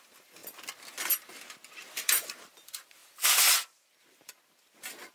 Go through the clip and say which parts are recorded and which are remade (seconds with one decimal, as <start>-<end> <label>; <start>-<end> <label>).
0.0-0.4 remade; 0.4-1.9 recorded; 1.9-5.1 remade